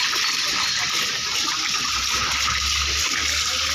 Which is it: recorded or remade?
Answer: recorded